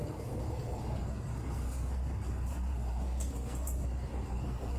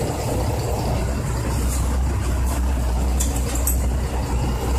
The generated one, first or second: first